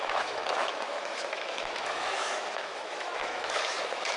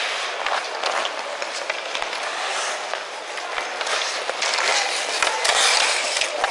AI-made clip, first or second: first